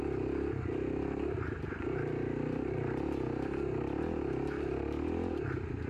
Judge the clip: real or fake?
real